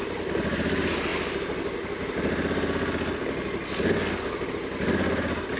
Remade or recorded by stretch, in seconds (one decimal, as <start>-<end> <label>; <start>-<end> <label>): 0.0-5.6 recorded